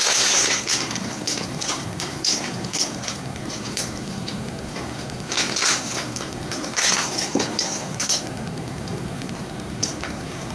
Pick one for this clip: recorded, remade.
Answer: remade